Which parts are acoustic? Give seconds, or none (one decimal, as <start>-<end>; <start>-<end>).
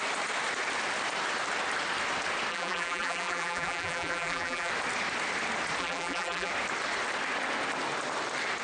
0.0-2.5; 4.7-5.8; 6.5-8.6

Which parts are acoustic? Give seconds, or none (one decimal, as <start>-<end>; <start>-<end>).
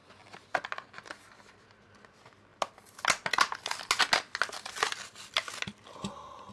0.0-6.5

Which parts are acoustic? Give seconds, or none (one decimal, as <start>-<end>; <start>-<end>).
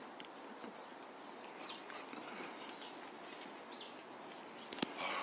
0.0-5.2